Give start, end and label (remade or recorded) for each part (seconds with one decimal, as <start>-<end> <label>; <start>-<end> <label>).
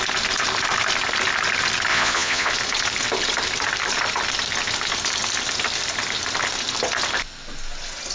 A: 0.0-1.9 recorded; 1.9-2.5 remade; 2.5-8.1 recorded